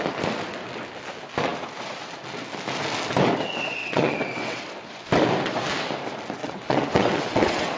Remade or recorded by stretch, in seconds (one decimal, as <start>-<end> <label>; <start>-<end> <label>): 0.0-3.8 recorded; 3.8-4.6 remade; 4.6-6.4 recorded; 6.4-7.8 remade